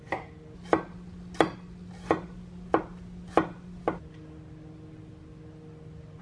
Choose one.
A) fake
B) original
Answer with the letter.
B